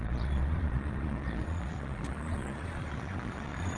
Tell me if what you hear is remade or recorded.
remade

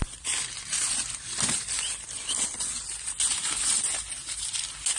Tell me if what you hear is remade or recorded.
recorded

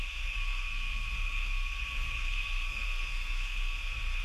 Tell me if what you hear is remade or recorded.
remade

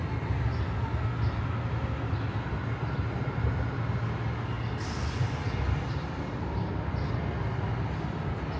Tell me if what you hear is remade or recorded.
recorded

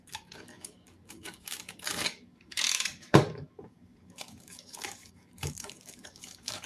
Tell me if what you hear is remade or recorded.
remade